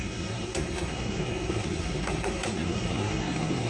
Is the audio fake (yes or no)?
yes